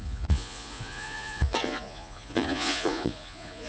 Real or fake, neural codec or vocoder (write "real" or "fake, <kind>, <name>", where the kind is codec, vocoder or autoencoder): fake, vocoder, Vocos